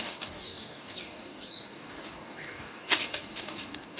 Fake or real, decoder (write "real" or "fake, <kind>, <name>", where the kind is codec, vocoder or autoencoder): fake, codec, DAC